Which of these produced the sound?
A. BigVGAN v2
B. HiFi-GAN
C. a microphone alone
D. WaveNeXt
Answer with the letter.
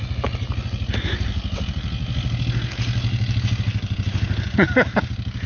C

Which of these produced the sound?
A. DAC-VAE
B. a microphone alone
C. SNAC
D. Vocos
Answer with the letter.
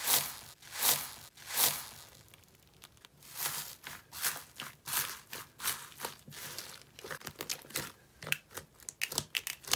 B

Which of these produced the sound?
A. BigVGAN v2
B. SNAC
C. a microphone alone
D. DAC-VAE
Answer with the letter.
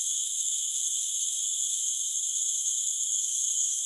D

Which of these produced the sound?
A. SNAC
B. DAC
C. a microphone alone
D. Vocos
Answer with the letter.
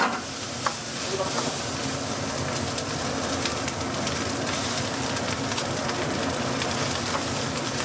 C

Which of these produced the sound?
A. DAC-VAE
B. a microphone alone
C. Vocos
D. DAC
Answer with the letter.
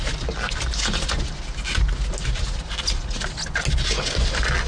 B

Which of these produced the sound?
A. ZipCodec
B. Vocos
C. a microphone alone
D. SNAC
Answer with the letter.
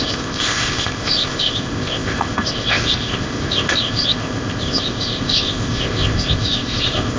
A